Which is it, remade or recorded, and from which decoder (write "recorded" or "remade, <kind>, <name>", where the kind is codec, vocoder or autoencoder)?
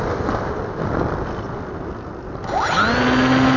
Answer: recorded